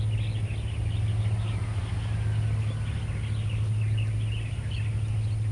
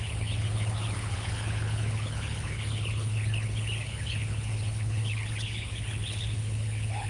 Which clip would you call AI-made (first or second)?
second